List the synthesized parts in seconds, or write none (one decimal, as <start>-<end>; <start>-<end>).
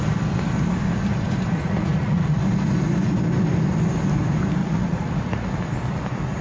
1.6-2.4; 4.6-5.5